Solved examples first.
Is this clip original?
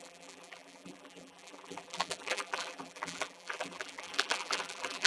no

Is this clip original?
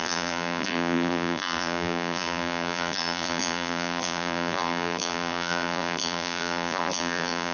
no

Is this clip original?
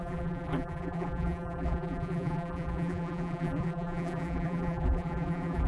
no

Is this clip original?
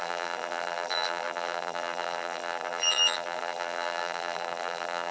no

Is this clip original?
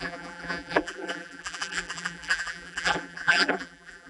no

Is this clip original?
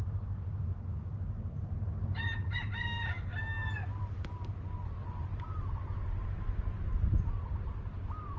yes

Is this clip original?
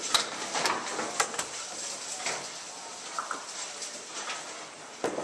yes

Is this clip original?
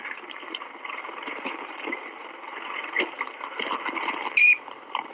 no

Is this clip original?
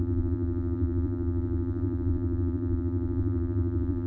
no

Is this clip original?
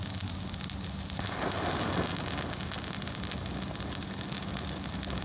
yes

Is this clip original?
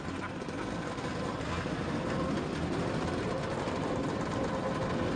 yes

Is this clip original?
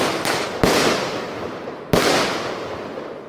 yes